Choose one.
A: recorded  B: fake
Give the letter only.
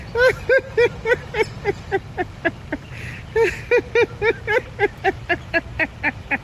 A